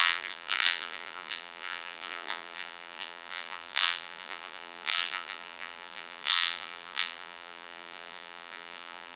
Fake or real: fake